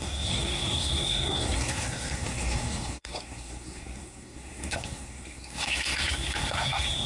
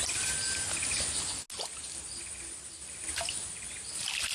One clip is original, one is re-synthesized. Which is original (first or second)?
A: second